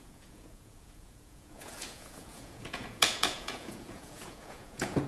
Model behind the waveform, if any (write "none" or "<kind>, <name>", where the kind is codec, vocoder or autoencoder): vocoder, Vocos